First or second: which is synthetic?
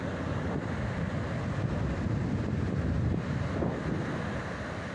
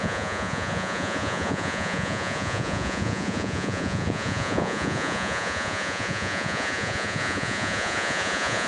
second